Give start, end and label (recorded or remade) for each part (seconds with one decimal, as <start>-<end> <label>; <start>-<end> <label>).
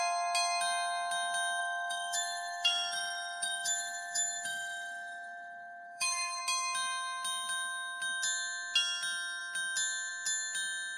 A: 0.0-1.6 recorded; 1.6-6.4 remade; 6.4-11.0 recorded